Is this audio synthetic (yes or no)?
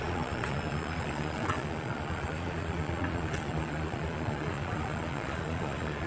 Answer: yes